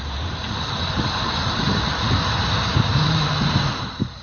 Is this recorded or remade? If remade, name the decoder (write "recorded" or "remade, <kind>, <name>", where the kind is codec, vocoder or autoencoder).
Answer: remade, vocoder, BigVGAN v2